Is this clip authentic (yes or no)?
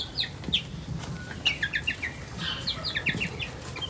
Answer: yes